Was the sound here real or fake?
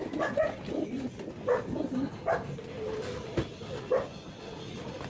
real